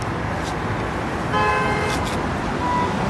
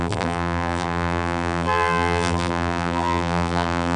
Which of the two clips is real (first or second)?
first